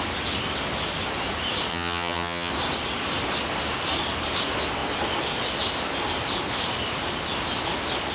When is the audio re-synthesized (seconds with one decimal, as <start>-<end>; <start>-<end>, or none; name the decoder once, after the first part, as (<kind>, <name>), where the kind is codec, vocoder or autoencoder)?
1.7-2.5 (vocoder, HiFi-GAN)